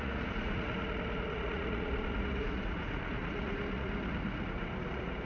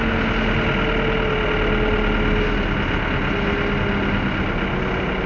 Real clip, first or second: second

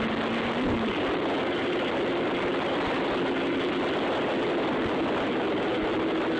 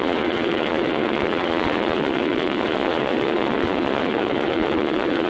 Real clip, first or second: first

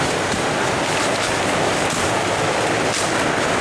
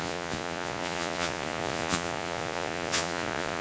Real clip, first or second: first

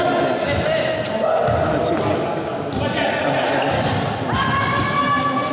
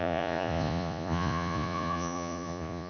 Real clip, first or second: first